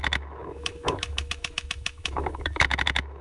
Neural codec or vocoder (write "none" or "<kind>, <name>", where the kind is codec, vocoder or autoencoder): autoencoder, DAC-VAE